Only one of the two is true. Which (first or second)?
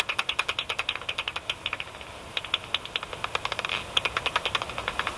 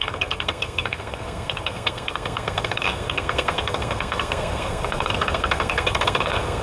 first